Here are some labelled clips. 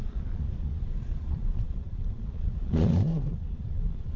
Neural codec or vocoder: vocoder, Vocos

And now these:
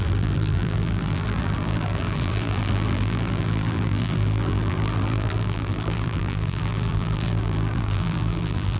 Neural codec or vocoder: vocoder, BigVGAN v2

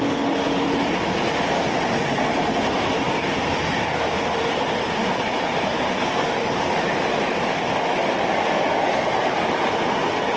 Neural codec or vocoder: none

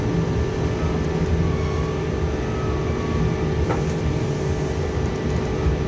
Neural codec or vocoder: none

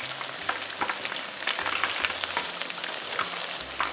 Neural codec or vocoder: none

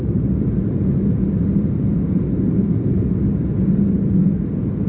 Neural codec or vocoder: none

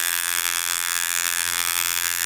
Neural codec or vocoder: vocoder, BigVGAN v2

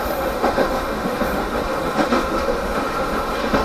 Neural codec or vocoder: autoencoder, DAC-VAE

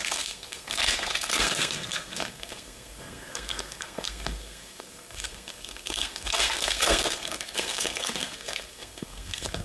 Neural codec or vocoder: codec, SNAC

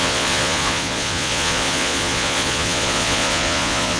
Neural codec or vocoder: vocoder, Vocos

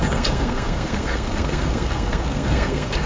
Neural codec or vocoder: codec, SNAC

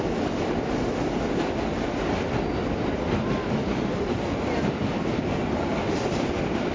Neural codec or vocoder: none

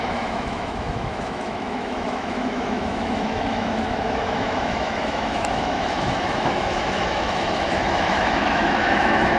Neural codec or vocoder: autoencoder, DAC-VAE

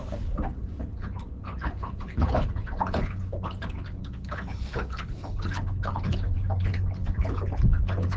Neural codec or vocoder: codec, HILCodec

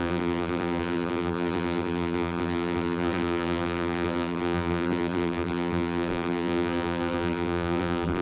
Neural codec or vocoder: vocoder, BigVGAN v2